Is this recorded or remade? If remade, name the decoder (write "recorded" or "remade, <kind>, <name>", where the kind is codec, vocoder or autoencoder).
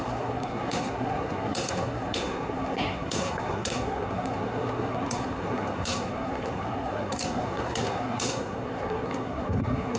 remade, codec, SNAC